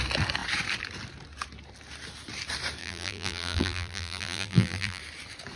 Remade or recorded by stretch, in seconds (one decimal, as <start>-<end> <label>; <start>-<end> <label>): 0.0-2.8 recorded; 2.8-5.0 remade; 5.0-5.6 recorded